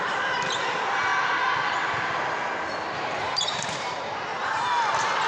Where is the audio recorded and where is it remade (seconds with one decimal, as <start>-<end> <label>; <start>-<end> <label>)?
0.0-1.1 remade; 1.1-2.9 recorded; 2.9-4.3 remade; 4.3-5.3 recorded